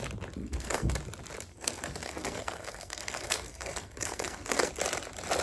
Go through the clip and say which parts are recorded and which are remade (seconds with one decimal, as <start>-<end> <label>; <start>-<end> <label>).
0.0-0.4 recorded; 0.4-0.9 remade; 0.9-1.5 recorded; 1.5-4.7 remade; 4.7-5.4 recorded